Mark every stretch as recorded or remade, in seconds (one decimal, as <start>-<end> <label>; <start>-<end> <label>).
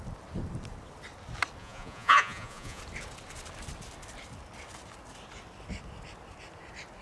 0.0-1.6 recorded; 1.6-2.8 remade; 2.8-7.0 recorded